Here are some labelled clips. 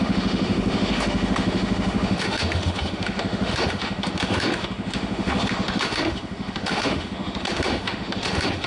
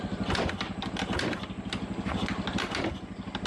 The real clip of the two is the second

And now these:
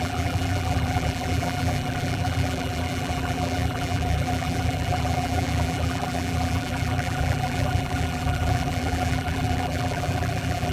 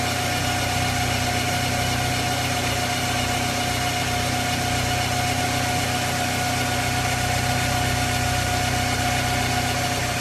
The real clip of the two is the second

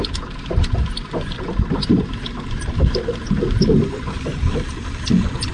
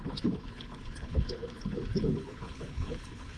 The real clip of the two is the first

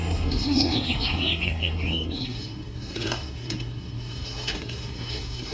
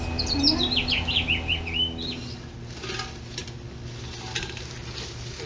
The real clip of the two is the second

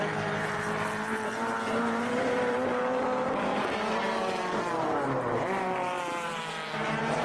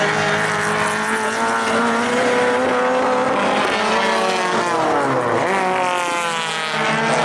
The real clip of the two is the second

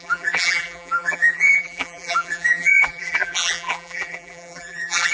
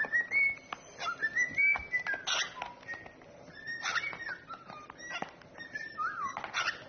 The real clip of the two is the second